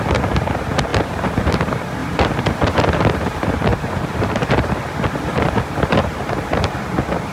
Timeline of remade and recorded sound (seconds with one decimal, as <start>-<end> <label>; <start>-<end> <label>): 0.0-0.9 recorded; 0.9-1.6 remade; 1.6-2.0 recorded; 2.0-2.8 remade; 2.8-3.7 recorded; 3.7-4.8 remade; 4.8-5.3 recorded; 5.3-6.2 remade; 6.2-7.3 recorded